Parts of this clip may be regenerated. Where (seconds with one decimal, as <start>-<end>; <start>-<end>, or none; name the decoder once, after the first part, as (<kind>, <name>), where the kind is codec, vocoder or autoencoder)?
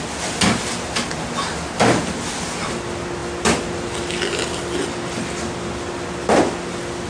none